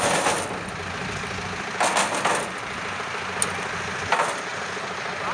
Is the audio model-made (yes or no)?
no